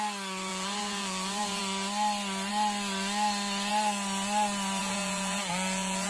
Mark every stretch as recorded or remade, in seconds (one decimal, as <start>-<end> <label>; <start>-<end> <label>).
0.0-0.5 recorded; 0.5-1.6 remade; 1.6-4.8 recorded; 4.8-6.1 remade